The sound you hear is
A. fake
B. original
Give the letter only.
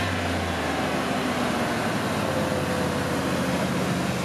B